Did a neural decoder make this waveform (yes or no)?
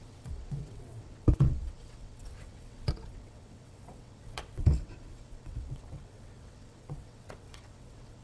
yes